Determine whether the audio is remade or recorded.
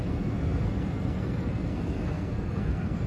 remade